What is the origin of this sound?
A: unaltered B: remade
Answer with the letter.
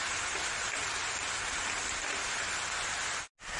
A